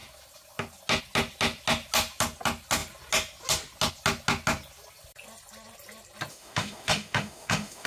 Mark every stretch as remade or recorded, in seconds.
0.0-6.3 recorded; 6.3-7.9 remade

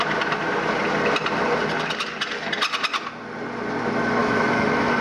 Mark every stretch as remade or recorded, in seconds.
0.0-4.2 recorded; 4.2-5.0 remade

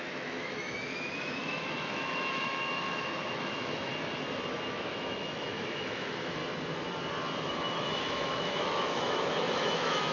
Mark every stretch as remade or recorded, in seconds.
0.0-3.9 remade; 3.9-4.7 recorded; 4.7-6.4 remade; 6.4-7.4 recorded; 7.4-10.1 remade

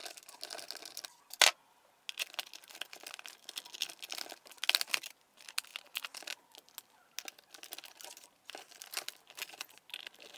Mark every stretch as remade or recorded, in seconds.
0.0-10.4 recorded